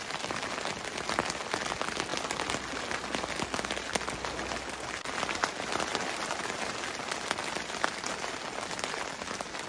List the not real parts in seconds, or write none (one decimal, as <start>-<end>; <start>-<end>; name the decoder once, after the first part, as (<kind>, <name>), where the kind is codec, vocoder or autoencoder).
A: none